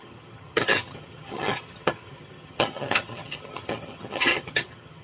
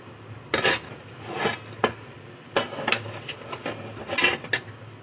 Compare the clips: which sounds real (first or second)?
second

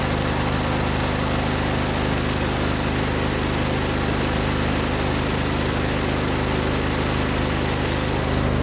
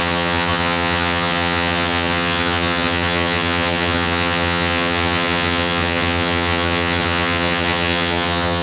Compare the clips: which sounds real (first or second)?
first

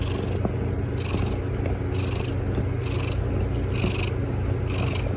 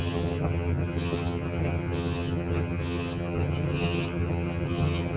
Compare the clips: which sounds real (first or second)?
first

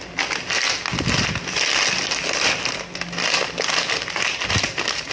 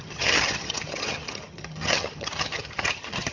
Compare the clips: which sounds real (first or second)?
first